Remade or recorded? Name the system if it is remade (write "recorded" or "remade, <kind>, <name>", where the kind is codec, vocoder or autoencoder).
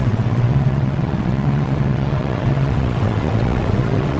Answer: remade, vocoder, WaveNeXt